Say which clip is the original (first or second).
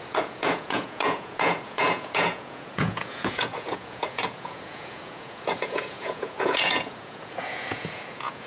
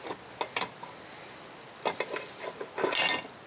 second